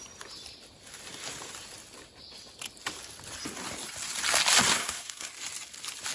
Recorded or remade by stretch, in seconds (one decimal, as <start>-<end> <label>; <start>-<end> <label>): 0.0-4.7 recorded; 4.7-5.3 remade; 5.3-6.1 recorded